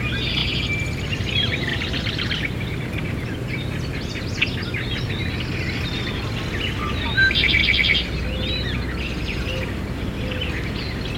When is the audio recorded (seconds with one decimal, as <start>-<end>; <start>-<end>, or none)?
0.4-1.1; 1.7-6.6; 7.6-11.2